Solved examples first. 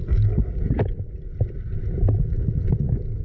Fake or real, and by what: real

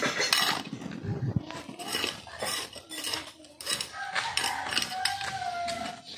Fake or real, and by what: real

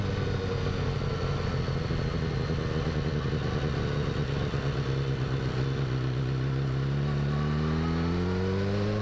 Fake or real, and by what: real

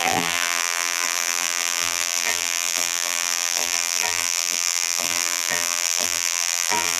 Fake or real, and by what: fake, vocoder, BigVGAN v2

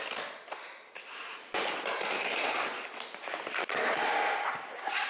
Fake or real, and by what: real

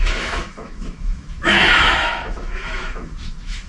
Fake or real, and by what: fake, autoencoder, DAC-VAE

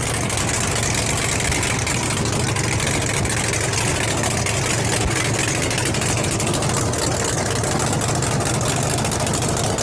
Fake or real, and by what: real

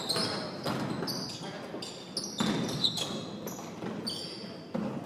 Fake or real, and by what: real